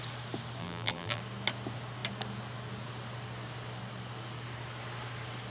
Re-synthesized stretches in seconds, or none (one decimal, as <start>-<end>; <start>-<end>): 0.6-1.2